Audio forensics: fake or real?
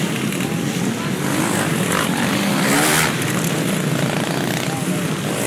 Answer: real